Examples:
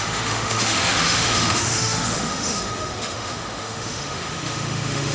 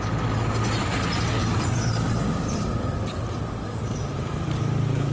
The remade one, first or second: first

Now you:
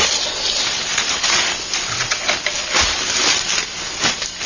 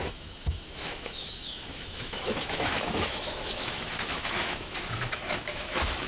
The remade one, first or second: second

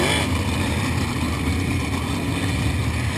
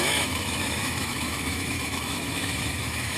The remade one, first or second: second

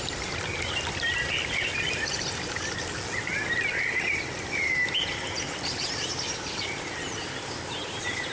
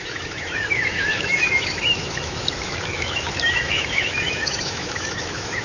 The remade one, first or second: second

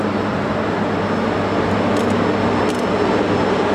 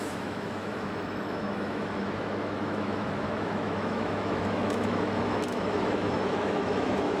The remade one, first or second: second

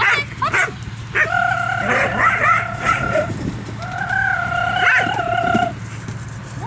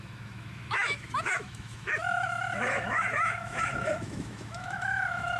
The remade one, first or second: second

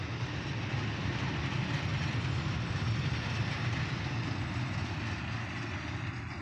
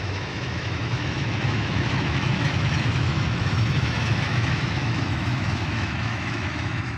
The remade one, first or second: second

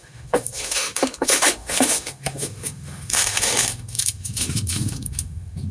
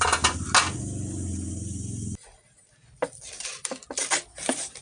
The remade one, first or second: first